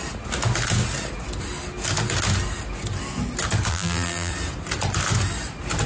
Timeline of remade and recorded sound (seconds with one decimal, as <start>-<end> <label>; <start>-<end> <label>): 0.0-3.7 recorded; 3.7-4.3 remade; 4.3-5.9 recorded